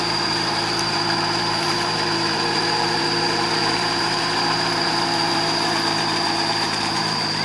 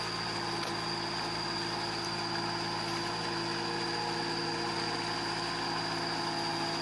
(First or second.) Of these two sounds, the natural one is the second